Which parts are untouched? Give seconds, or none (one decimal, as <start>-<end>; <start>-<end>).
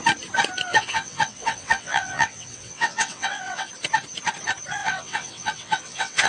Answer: 0.0-0.7; 3.7-4.8